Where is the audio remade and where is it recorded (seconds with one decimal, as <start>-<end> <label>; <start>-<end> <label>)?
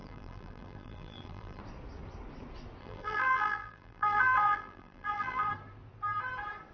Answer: 0.0-1.6 remade; 1.6-2.8 recorded; 2.8-5.5 remade; 5.5-6.7 recorded